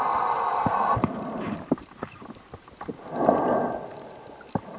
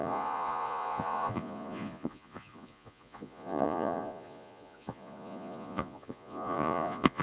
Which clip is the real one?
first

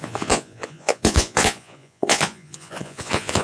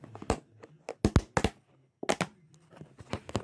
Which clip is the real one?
second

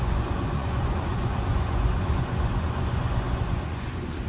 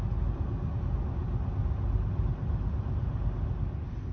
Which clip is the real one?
second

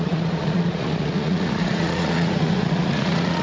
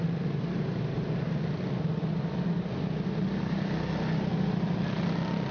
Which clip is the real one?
second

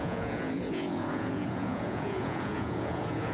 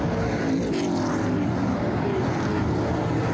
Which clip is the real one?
second